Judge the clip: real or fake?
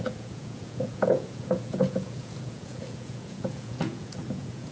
fake